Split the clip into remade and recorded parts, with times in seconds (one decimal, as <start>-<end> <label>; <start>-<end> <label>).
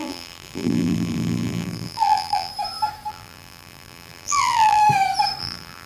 0.0-2.5 remade; 2.5-3.1 recorded; 3.1-4.8 remade; 4.8-5.4 recorded; 5.4-5.9 remade